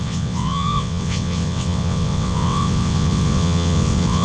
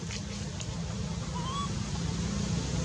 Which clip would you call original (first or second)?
second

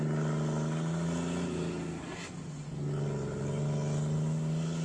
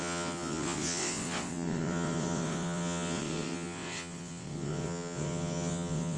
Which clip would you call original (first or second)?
first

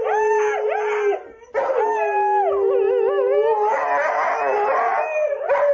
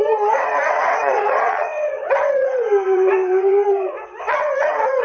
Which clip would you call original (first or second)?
first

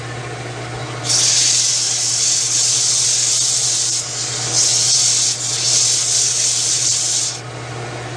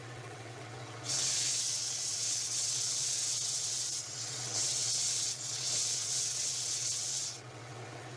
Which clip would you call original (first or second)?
first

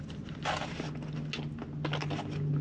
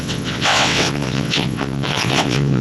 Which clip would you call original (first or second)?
first